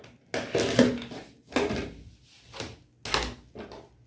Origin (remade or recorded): recorded